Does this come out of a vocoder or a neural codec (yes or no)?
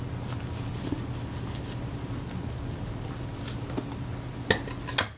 no